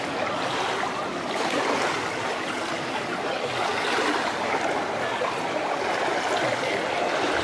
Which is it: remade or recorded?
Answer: recorded